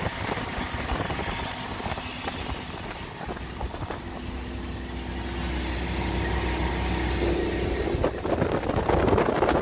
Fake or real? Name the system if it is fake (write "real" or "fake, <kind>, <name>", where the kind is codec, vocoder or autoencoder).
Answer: real